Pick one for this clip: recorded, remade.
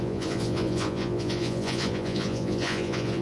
remade